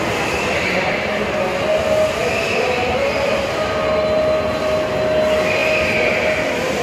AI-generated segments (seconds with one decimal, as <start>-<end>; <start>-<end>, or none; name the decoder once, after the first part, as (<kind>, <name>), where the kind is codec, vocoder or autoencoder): 2.2-2.9 (vocoder, BigVGAN v2)